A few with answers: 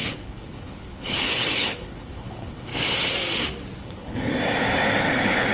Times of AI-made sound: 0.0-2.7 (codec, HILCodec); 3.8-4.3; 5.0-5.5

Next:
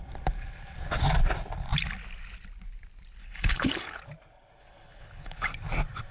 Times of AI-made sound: 3.2-4.0 (codec, HILCodec); 4.6-5.5

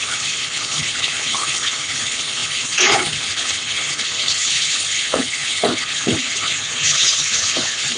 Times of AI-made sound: 0.0-8.0 (codec, HILCodec)